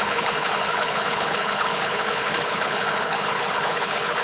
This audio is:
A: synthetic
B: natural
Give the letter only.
A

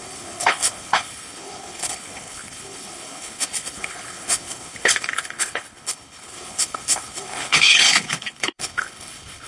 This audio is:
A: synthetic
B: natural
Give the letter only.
A